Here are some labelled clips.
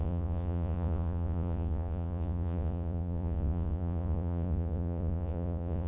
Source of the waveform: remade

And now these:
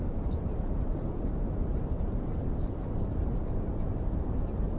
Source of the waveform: remade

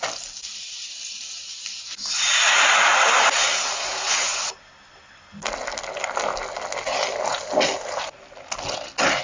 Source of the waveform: recorded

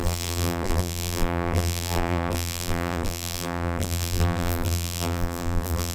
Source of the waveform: remade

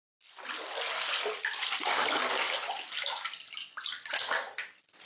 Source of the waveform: recorded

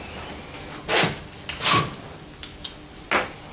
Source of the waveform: recorded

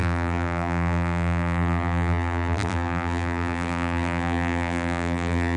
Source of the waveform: remade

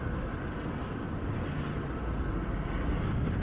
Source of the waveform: recorded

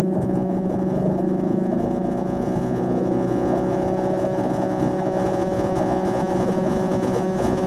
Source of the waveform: remade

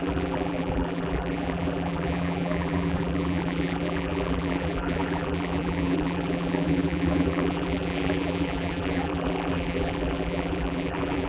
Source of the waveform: remade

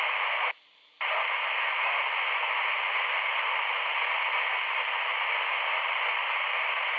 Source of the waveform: recorded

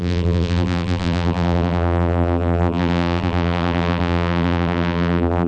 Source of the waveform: remade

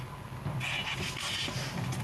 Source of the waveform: recorded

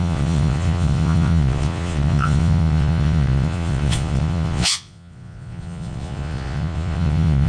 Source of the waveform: remade